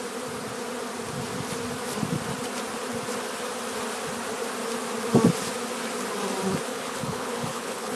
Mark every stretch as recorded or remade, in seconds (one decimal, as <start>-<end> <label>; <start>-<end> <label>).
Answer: 0.0-6.7 recorded; 6.7-8.0 remade